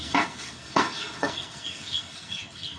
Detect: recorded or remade remade